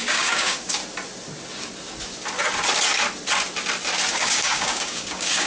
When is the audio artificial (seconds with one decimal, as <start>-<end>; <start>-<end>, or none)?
0.0-0.8; 4.1-5.5